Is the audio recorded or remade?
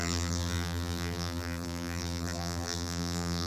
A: remade